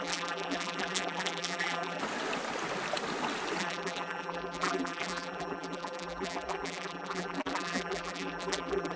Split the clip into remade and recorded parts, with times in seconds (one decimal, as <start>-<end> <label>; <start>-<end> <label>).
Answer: 0.0-2.0 remade; 2.0-3.6 recorded; 3.6-9.0 remade